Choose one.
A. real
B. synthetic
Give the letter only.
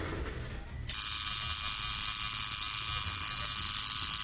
A